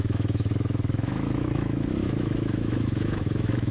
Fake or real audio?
fake